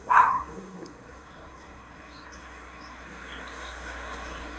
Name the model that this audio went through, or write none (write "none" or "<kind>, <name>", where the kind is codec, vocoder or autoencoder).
codec, SNAC